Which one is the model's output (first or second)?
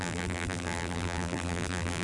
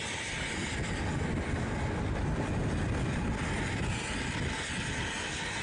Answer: first